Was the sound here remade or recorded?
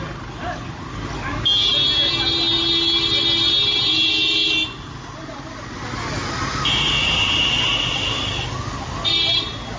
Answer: recorded